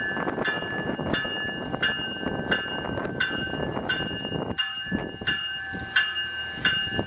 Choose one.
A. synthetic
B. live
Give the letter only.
B